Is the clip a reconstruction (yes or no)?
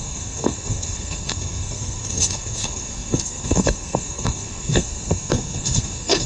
yes